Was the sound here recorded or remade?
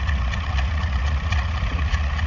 remade